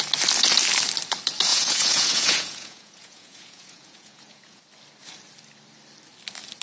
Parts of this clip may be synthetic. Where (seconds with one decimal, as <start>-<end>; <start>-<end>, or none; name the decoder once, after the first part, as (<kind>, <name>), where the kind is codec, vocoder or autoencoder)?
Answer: 1.5-4.6 (vocoder, Vocos)

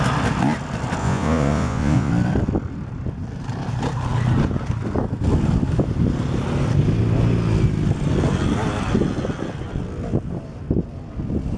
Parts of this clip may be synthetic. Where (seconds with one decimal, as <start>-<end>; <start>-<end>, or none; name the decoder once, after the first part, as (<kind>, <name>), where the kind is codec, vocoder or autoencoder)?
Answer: 1.0-2.1 (vocoder, Vocos)

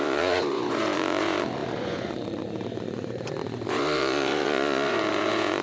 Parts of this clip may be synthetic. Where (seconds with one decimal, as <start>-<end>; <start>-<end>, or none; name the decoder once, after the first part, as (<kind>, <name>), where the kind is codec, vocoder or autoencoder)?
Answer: 0.0-5.6 (vocoder, Vocos)

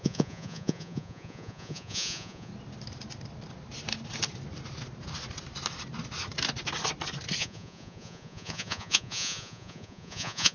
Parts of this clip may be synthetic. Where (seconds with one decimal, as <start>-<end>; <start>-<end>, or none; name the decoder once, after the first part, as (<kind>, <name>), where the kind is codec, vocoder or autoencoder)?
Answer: 0.0-2.5 (vocoder, Vocos); 7.4-10.5

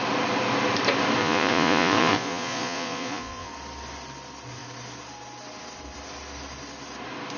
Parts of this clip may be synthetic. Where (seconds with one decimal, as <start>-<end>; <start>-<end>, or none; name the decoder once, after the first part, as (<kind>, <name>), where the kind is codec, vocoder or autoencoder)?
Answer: 1.2-3.5 (vocoder, Vocos)

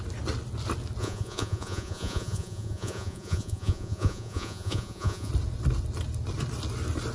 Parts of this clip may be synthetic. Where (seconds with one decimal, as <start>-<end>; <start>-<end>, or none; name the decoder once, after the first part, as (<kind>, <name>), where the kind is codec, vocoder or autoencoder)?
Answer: 1.0-5.3 (vocoder, Vocos)